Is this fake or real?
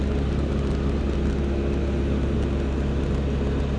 real